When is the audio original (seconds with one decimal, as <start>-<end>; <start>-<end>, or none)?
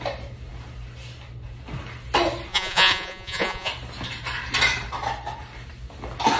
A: 0.0-2.5; 3.7-6.4